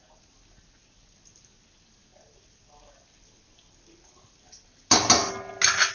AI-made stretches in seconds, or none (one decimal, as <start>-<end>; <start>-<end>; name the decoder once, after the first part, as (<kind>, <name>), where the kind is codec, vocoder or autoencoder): none